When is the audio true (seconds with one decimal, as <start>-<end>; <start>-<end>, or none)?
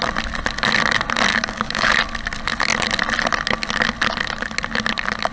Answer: 0.0-1.3; 1.9-5.3